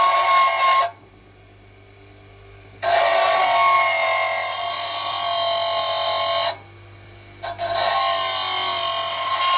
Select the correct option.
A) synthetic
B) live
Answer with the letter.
B